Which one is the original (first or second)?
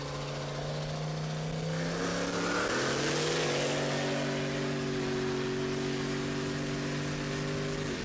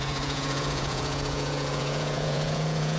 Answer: first